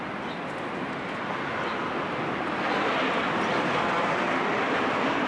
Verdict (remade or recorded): recorded